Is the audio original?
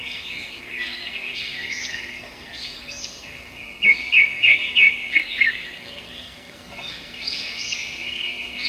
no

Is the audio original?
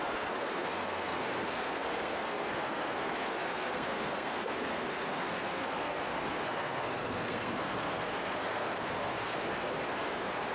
no